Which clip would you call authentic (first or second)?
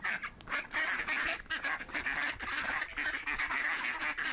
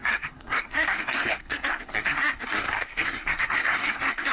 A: first